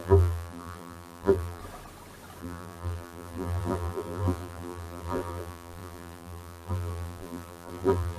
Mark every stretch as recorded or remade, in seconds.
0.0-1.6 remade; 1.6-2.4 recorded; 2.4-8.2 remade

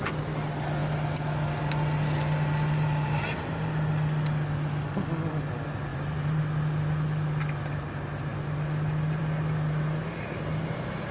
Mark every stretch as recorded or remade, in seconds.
0.0-5.9 recorded; 5.9-6.4 remade; 6.4-11.1 recorded